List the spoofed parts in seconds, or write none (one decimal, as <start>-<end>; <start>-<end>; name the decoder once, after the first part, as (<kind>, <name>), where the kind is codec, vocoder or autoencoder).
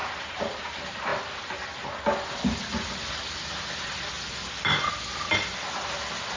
0.0-0.7 (vocoder, BigVGAN v2)